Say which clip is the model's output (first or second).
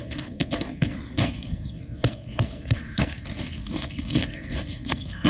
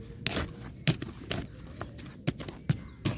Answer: first